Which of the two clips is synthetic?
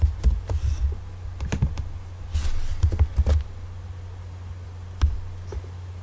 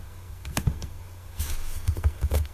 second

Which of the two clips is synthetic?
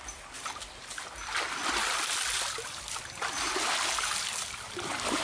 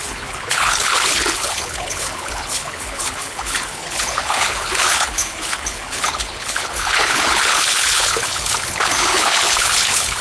second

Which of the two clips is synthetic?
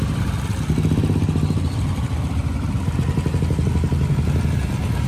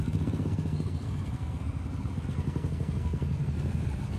second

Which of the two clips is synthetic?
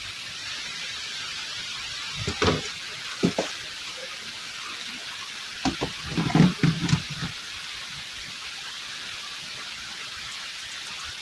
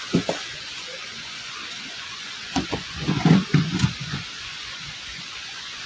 second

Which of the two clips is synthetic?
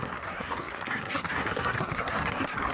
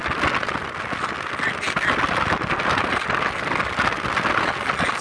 first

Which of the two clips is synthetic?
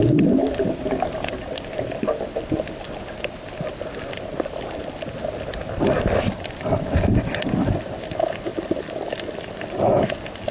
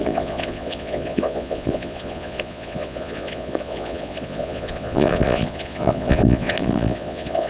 second